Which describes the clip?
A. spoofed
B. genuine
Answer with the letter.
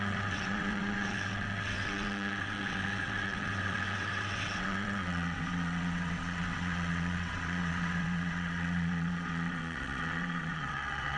A